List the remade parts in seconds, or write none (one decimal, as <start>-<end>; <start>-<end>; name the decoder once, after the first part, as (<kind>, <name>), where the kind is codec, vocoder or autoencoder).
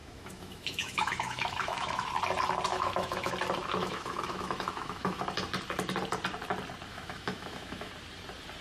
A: 0.0-2.1 (autoencoder, DAC-VAE); 2.7-3.3; 3.8-5.2; 6.9-7.9